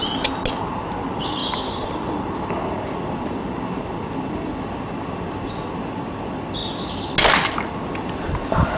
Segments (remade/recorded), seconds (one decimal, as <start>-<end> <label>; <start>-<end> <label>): 0.0-8.8 recorded

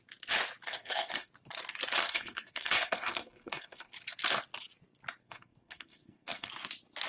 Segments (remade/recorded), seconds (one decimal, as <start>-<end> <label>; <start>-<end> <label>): 0.0-0.7 recorded; 0.7-1.3 remade; 1.3-2.0 recorded; 2.0-3.9 remade; 3.9-5.2 recorded; 5.2-6.5 remade; 6.5-7.1 recorded

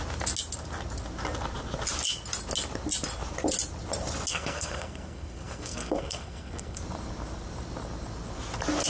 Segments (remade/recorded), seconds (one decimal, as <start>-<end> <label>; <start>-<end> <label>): 0.0-4.3 recorded; 4.3-6.8 remade; 6.8-8.9 recorded

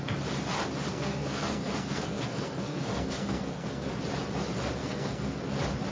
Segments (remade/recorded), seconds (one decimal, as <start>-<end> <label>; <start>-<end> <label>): 0.0-0.9 recorded; 0.9-3.9 remade; 3.9-4.8 recorded; 4.8-5.4 remade; 5.4-5.9 recorded

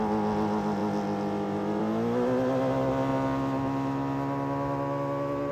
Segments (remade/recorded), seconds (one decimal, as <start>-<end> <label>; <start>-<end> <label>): 0.0-5.5 recorded

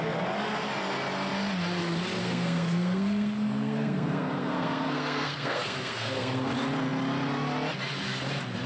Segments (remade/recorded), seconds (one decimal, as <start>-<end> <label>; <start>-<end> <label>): 0.0-2.2 recorded; 2.2-6.5 remade; 6.5-8.7 recorded

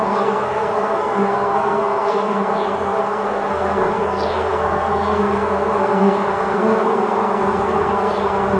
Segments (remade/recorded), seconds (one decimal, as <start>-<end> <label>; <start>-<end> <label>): 0.0-8.6 remade